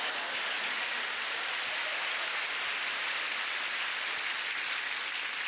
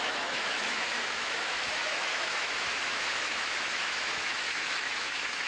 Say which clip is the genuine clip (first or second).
first